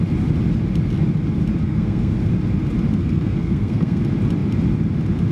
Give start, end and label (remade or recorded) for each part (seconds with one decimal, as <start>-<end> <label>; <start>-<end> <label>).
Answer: 0.0-1.6 recorded; 1.6-2.3 remade; 2.3-3.0 recorded; 3.0-4.0 remade; 4.0-5.3 recorded